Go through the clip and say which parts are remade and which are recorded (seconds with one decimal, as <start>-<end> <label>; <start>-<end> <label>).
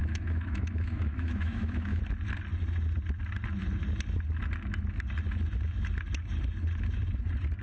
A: 0.0-2.0 remade; 2.0-7.6 recorded